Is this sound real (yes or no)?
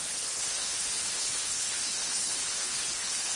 no